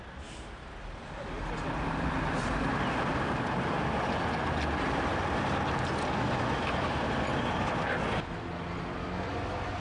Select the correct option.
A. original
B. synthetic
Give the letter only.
A